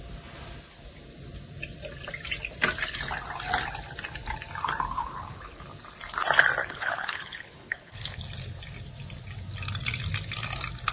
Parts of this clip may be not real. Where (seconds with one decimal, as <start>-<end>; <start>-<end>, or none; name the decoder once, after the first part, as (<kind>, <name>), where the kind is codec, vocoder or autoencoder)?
5.0-5.6 (codec, HILCodec); 6.6-8.2